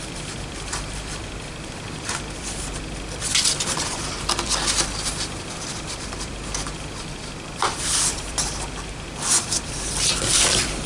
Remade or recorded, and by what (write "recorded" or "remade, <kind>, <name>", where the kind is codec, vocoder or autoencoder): remade, vocoder, BigVGAN v2